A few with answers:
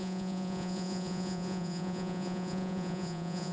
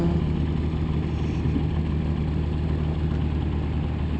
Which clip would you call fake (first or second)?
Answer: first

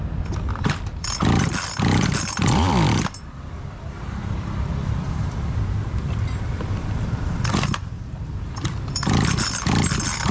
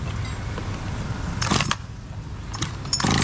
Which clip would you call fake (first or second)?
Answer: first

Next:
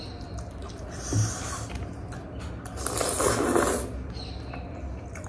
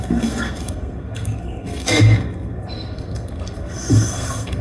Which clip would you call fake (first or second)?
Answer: second